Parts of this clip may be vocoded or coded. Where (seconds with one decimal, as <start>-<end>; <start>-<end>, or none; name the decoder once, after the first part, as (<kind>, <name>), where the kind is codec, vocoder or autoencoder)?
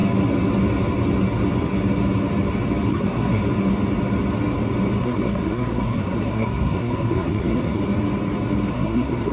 2.9-3.4 (codec, SNAC); 5.0-7.8; 8.7-9.3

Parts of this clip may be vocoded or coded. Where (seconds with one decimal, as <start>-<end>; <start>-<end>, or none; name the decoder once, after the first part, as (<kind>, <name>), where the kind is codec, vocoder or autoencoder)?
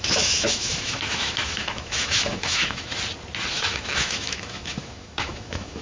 0.0-2.9 (autoencoder, DAC-VAE); 3.5-5.8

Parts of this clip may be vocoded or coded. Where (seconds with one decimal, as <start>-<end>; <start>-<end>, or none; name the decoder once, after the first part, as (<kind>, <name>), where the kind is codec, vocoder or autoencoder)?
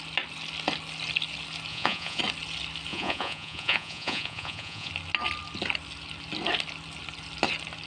1.7-2.2 (vocoder, Vocos); 2.9-4.9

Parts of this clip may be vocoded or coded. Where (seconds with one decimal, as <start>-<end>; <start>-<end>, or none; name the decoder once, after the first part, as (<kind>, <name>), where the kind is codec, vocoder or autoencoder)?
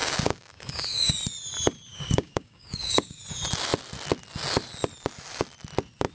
0.0-1.1 (codec, DAC); 1.9-3.2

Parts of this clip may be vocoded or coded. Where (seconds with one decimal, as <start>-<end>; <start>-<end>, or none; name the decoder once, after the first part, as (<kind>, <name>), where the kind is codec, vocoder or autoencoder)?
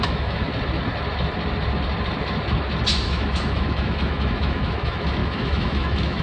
0.0-0.5 (autoencoder, DAC-VAE); 3.0-6.2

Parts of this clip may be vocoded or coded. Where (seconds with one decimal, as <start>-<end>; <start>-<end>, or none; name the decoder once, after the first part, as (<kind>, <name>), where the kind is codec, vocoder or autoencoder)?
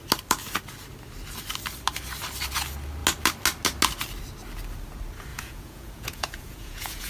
5.3-7.1 (vocoder, Vocos)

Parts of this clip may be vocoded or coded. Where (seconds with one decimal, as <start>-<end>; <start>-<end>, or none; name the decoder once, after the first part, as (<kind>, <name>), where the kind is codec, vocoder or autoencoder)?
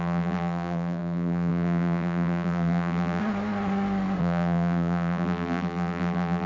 0.0-3.2 (vocoder, BigVGAN v2); 4.2-6.5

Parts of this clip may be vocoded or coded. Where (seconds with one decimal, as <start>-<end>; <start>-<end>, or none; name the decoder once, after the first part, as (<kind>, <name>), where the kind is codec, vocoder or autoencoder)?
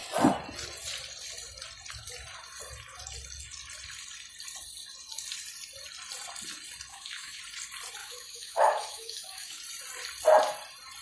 6.9-7.4 (autoencoder, DAC-VAE); 8.0-9.6